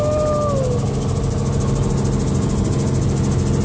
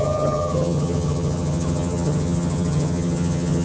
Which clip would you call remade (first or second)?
second